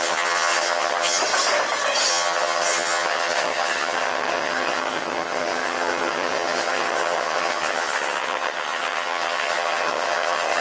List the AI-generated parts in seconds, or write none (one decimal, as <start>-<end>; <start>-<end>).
0.0-1.2; 2.1-10.6